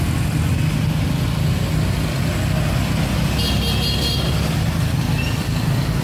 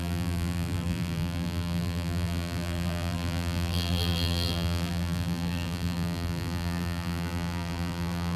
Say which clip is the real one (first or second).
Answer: first